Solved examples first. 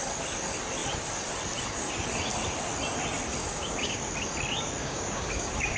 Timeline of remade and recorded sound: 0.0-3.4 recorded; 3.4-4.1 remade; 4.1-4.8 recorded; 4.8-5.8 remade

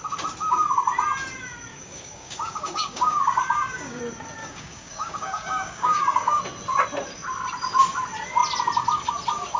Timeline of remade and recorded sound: 0.0-1.7 recorded; 1.7-4.0 remade; 4.0-4.4 recorded; 4.4-6.4 remade; 6.4-9.6 recorded

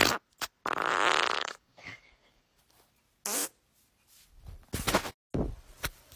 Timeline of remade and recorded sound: 0.0-1.4 recorded; 1.4-2.6 remade; 2.6-6.2 recorded

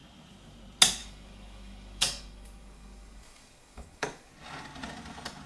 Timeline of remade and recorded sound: 0.0-1.0 recorded; 1.0-4.3 remade; 4.3-5.5 recorded

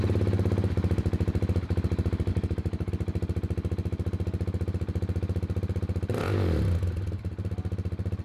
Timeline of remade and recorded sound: 0.0-2.3 recorded; 2.3-2.9 remade; 2.9-8.2 recorded

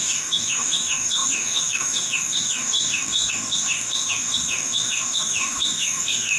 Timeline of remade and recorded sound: 0.0-6.4 remade